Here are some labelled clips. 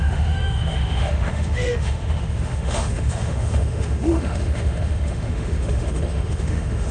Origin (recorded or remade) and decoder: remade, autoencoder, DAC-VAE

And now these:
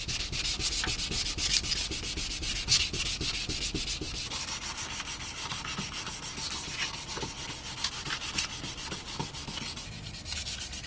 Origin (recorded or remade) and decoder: recorded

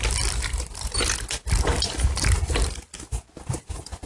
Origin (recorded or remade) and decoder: recorded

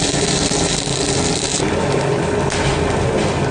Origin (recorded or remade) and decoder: recorded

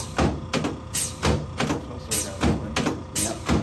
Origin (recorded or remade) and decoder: recorded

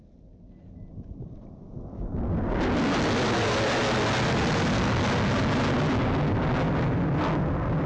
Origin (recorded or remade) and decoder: recorded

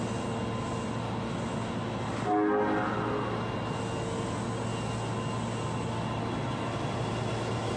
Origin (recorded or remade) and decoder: recorded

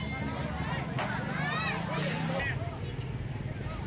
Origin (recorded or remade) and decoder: recorded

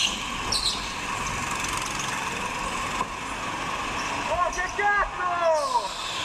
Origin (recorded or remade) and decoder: recorded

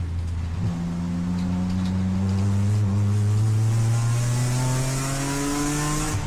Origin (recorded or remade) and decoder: recorded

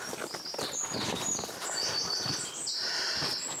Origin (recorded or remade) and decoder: recorded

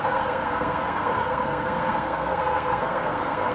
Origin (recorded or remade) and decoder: remade, codec, SNAC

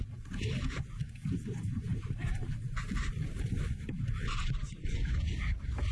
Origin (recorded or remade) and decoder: remade, vocoder, BigVGAN v2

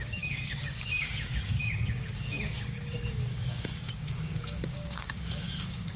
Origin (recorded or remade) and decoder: remade, codec, DAC